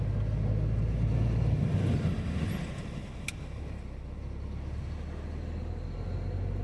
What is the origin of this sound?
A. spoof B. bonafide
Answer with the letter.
B